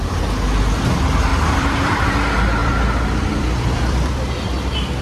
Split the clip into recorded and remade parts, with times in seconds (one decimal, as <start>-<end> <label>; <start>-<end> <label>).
0.0-1.3 recorded; 1.3-2.1 remade; 2.1-2.6 recorded; 2.6-4.3 remade; 4.3-5.0 recorded